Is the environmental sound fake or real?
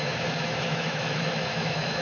fake